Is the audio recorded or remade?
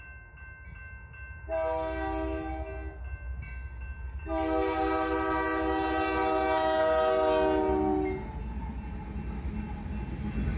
recorded